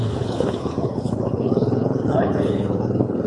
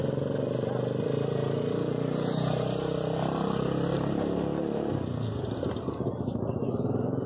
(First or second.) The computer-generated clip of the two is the first